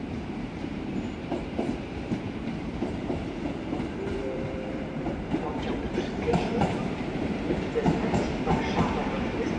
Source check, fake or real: fake